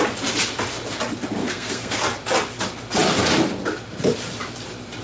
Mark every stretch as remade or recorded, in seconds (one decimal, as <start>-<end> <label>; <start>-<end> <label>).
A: 0.0-1.4 recorded; 1.4-2.0 remade; 2.0-5.0 recorded

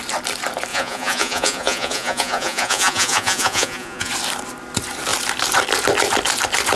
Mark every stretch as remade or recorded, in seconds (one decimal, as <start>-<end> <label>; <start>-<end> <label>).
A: 0.0-0.7 recorded; 0.7-4.1 remade; 4.1-6.8 recorded

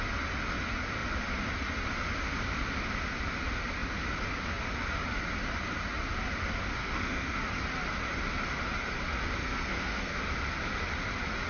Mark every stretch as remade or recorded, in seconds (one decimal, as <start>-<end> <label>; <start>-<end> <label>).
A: 0.0-6.8 recorded; 6.8-7.4 remade; 7.4-9.4 recorded; 9.4-10.2 remade; 10.2-11.5 recorded